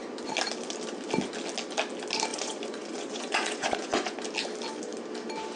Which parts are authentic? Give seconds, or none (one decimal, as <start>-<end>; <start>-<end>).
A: 0.0-2.3; 4.2-5.6